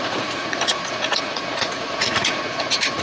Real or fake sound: fake